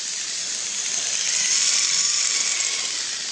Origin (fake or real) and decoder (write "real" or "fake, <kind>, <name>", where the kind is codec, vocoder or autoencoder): real